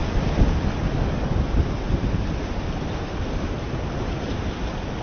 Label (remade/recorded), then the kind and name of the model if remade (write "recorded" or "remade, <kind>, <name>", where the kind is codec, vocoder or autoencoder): recorded